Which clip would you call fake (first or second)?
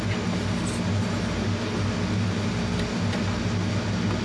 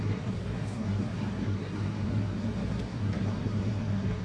second